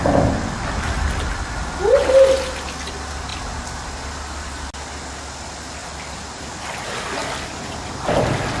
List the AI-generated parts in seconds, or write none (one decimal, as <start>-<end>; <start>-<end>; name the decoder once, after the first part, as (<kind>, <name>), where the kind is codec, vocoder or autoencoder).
5.8-6.6 (vocoder, BigVGAN v2); 7.2-8.1